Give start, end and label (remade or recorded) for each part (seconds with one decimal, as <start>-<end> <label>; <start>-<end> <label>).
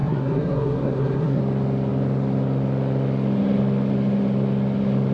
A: 0.0-1.4 remade; 1.4-5.1 recorded